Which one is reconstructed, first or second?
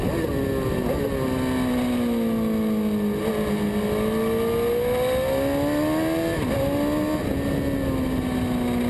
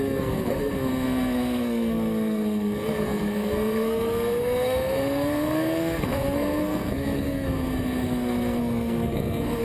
second